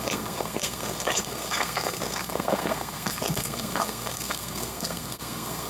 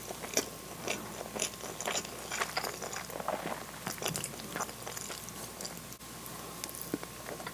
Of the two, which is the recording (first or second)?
second